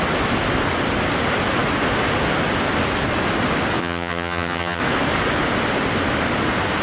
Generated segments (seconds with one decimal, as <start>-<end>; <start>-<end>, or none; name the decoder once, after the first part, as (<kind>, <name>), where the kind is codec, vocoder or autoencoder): 3.8-4.8 (vocoder, HiFi-GAN)